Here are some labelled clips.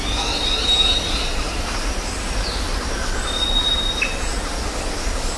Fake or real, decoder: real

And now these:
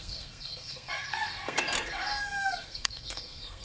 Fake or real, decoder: fake, codec, SNAC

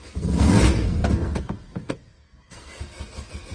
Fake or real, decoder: fake, codec, SNAC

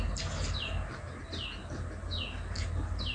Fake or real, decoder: real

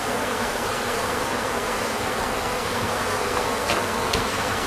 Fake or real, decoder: fake, codec, SNAC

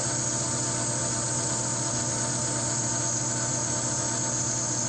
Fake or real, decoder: real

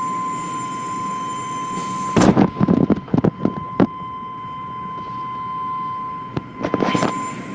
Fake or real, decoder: real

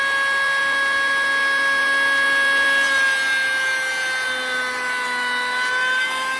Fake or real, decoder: real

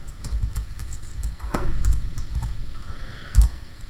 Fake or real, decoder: fake, codec, SNAC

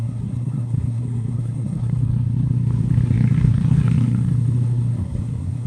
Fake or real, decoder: fake, codec, SNAC